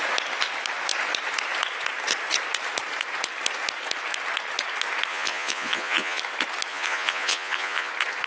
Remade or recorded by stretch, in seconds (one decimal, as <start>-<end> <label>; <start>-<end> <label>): 0.0-5.1 recorded; 5.1-6.2 remade; 6.2-6.7 recorded; 6.7-7.9 remade; 7.9-8.3 recorded